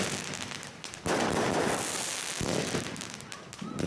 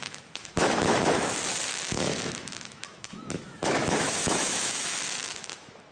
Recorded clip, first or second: first